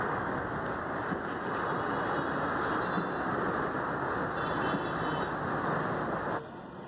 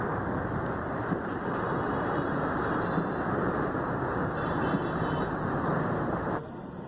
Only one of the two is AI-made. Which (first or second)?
second